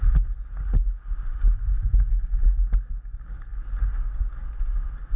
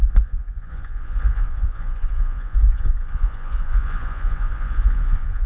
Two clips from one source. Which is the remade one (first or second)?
second